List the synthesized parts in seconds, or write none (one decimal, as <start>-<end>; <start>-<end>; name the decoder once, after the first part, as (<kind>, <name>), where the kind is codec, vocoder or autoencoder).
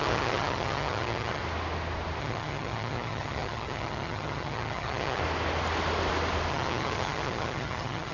0.0-1.4 (vocoder, HiFi-GAN); 2.2-5.2; 6.5-8.1